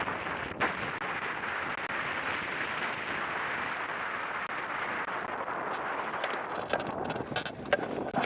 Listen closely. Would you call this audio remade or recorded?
recorded